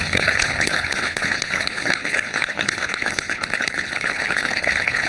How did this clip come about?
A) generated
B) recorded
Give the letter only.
A